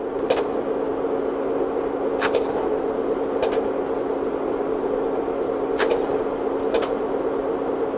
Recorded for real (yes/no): yes